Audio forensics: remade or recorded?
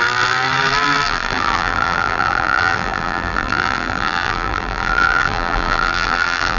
remade